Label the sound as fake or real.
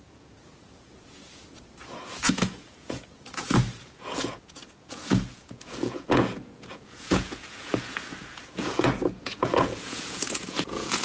fake